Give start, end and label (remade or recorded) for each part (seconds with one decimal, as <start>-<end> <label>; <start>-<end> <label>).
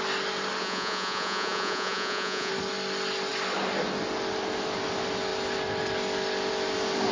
0.0-0.6 recorded; 0.6-2.5 remade; 2.5-7.1 recorded